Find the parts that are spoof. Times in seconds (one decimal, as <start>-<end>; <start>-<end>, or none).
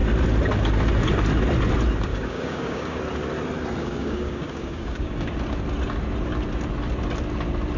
2.1-3.0; 3.8-5.3